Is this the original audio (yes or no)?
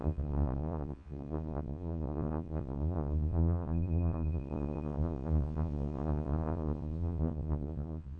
no